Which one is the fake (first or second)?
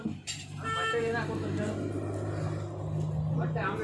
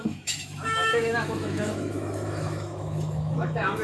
second